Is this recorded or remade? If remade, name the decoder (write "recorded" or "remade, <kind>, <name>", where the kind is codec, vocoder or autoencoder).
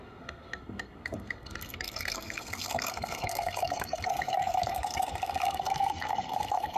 remade, codec, SNAC